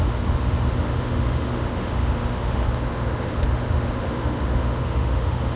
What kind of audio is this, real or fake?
fake